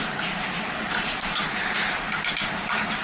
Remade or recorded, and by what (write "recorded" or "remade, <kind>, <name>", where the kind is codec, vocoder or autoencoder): remade, vocoder, BigVGAN v2